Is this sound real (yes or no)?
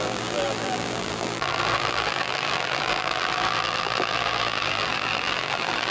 no